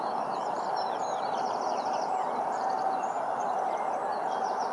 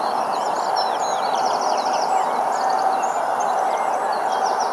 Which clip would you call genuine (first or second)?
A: second